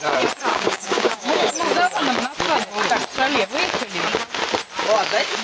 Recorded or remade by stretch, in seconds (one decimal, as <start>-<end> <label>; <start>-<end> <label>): 0.0-0.5 recorded; 0.5-1.5 remade; 1.5-5.4 recorded